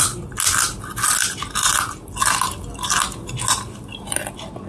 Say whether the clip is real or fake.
real